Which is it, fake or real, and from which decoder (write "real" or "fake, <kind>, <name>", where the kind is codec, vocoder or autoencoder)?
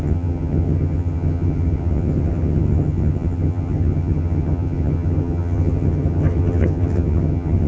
fake, vocoder, HiFi-GAN